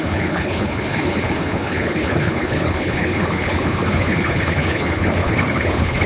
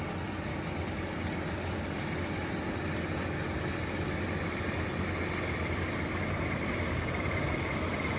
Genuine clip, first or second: second